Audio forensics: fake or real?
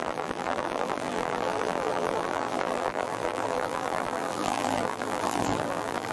fake